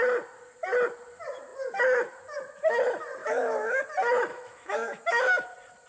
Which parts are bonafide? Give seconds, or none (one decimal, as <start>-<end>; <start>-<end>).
0.0-3.2; 3.8-4.3; 5.5-5.9